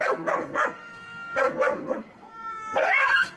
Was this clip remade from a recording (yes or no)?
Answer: yes